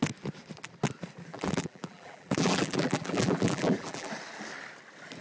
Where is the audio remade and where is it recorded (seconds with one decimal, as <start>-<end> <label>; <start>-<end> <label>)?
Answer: 0.0-1.3 recorded; 1.3-4.1 remade; 4.1-5.2 recorded